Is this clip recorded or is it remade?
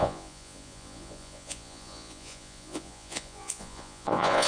remade